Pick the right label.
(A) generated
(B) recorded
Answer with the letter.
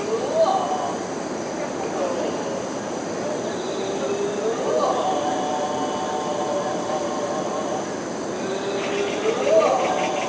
B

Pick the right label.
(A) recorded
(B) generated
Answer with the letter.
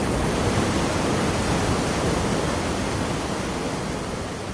A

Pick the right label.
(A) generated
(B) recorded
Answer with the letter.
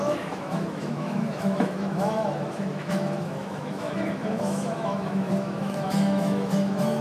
A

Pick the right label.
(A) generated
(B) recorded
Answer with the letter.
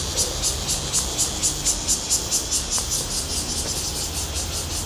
B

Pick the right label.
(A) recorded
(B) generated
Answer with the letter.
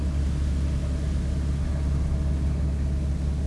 A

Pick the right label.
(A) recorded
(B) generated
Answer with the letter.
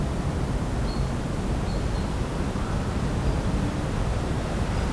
A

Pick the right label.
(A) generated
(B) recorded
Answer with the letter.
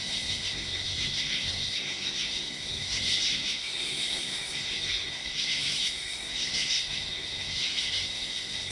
A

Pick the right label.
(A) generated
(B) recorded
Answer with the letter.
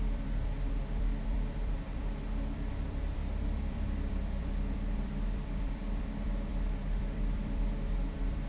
A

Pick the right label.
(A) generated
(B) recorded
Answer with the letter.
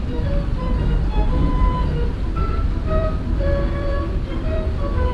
A